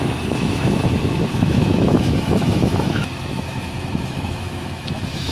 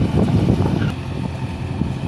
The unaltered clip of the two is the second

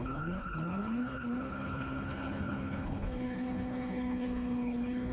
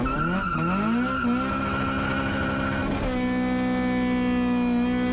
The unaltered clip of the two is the second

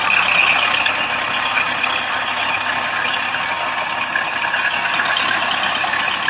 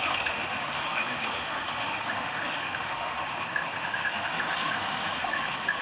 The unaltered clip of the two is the first